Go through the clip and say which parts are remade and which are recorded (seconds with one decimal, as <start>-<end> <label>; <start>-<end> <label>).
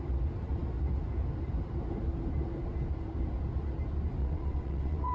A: 0.0-4.2 recorded; 4.2-5.1 remade